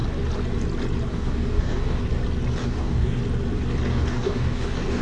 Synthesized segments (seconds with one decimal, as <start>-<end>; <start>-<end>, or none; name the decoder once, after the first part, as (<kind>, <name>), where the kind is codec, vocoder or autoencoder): 1.1-2.0 (codec, DAC); 2.6-3.2; 3.9-5.0